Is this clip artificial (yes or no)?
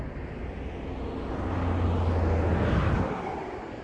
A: no